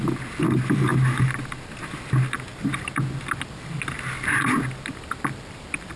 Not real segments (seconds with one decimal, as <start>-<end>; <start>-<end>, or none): none